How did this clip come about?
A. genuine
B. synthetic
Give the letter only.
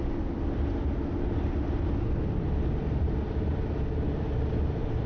A